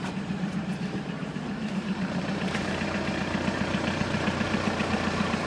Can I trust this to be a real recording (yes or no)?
no